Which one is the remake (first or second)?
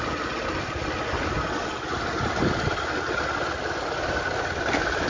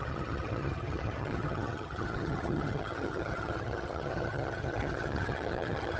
second